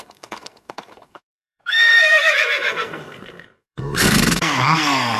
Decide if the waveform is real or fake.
fake